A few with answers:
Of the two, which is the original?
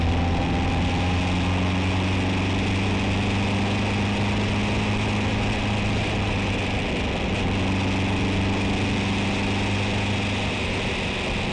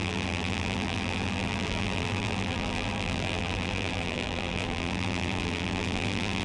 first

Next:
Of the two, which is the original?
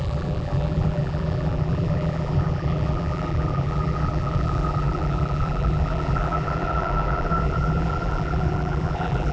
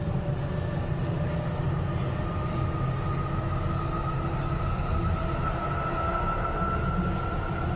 second